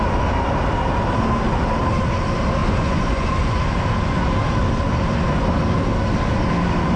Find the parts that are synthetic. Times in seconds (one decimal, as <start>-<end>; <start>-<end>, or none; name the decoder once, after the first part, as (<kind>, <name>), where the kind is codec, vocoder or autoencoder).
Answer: 2.6-3.6 (vocoder, Vocos)